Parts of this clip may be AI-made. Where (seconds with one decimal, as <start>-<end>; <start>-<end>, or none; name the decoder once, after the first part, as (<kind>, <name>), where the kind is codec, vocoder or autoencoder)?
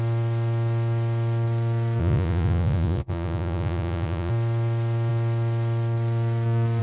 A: 2.0-4.3 (vocoder, Vocos)